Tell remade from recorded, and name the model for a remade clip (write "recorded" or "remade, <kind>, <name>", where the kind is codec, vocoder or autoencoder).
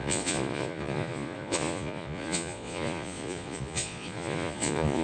remade, vocoder, Vocos